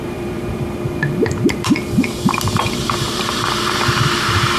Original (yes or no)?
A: no